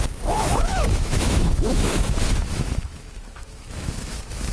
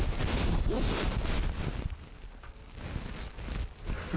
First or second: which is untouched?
second